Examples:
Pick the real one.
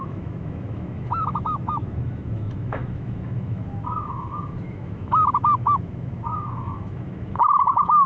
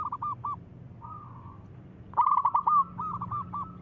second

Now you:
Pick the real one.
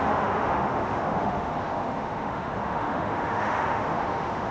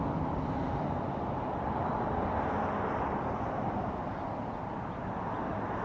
second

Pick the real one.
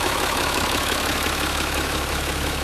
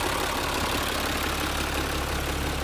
second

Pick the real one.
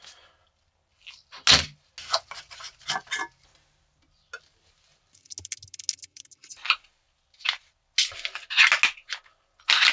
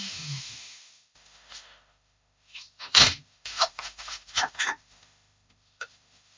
first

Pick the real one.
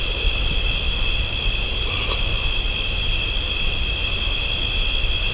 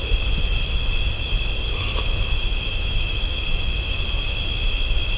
first